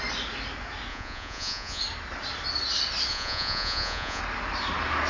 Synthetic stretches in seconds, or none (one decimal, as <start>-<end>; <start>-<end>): 0.9-1.8; 3.1-4.2